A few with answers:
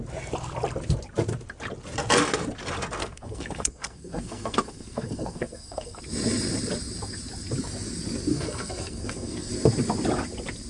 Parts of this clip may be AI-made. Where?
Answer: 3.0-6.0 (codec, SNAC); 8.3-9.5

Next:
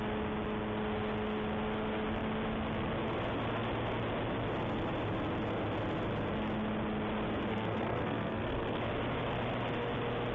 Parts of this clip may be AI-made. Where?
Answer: 7.5-8.8 (codec, SNAC)

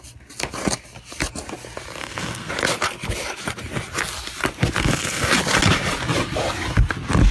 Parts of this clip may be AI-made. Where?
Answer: 2.0-2.5 (codec, SNAC); 4.8-5.3

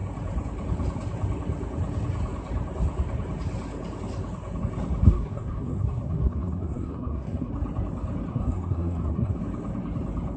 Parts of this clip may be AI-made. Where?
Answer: 5.1-7.5 (codec, SNAC); 8.3-9.4

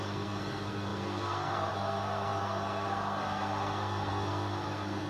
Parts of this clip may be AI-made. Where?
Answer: 0.0-5.1 (codec, SNAC)

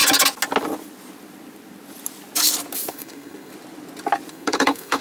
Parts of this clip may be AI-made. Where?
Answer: 2.9-3.5 (codec, SNAC); 4.3-5.0

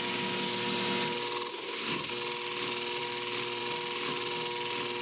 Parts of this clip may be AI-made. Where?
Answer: 1.5-2.1 (codec, SNAC)

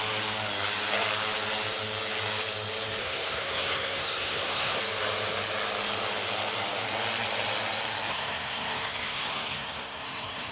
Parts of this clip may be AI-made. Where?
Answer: 3.0-4.8 (codec, SNAC); 8.1-10.5